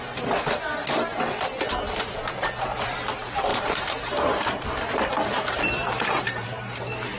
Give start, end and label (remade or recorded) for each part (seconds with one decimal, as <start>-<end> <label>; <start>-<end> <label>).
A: 0.0-3.5 recorded; 3.5-6.8 remade; 6.8-7.2 recorded